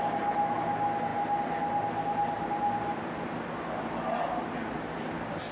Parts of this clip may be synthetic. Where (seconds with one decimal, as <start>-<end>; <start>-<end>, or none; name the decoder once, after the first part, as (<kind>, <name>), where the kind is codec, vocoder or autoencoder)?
none